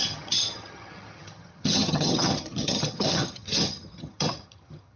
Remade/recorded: remade